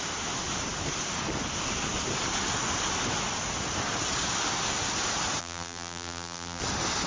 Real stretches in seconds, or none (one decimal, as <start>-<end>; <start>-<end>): 0.0-5.4; 6.6-7.1